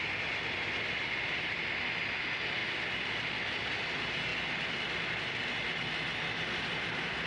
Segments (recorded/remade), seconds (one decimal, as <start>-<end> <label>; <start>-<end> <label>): 0.0-7.3 recorded